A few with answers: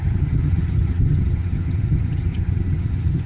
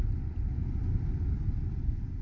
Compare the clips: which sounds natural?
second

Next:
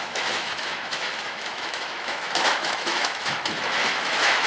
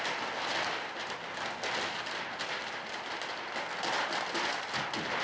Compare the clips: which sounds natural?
second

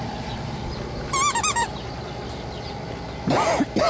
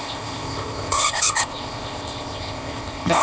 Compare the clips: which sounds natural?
first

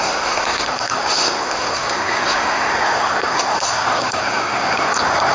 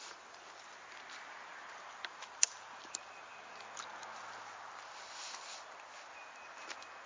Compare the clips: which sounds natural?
second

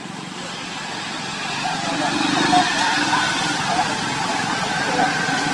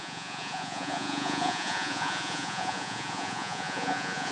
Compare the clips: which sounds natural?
first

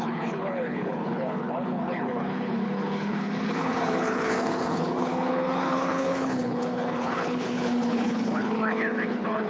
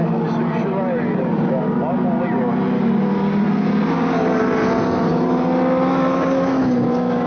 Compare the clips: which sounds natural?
second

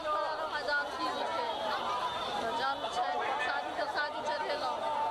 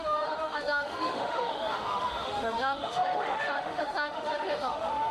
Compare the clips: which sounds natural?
first